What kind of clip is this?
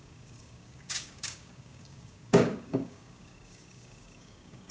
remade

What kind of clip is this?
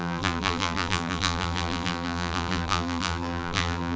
remade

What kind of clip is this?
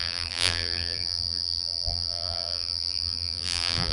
remade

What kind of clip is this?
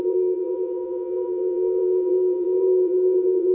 remade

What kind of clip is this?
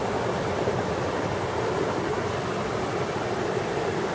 recorded